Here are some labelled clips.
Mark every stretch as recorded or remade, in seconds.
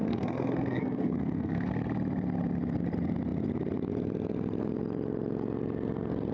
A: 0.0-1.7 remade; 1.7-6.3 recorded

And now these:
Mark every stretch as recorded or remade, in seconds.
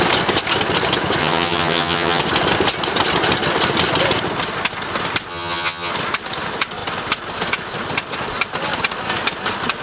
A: 0.0-1.2 recorded; 1.2-2.2 remade; 2.2-5.3 recorded; 5.3-5.9 remade; 5.9-9.8 recorded